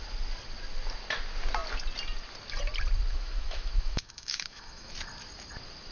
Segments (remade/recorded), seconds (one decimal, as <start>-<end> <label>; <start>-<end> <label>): 0.0-3.1 recorded; 3.1-4.9 remade; 4.9-5.9 recorded